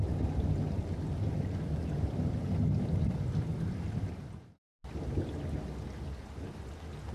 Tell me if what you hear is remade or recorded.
recorded